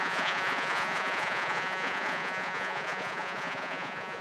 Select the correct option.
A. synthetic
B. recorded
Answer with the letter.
A